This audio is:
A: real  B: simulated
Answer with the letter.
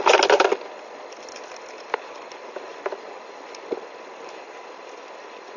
A